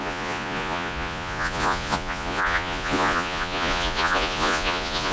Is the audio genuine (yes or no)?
no